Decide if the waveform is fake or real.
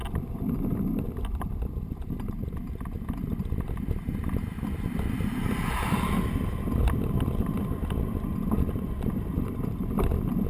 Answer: real